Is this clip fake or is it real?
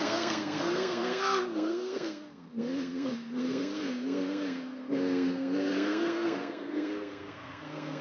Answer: fake